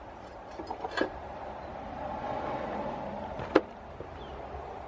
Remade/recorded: recorded